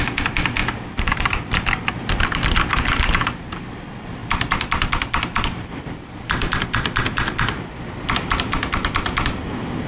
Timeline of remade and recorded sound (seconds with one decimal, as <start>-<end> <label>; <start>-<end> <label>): 0.0-0.6 recorded; 0.6-1.9 remade; 1.9-4.2 recorded; 4.2-9.5 remade; 9.5-9.9 recorded